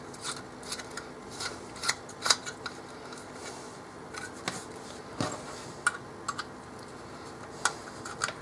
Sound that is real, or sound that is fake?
real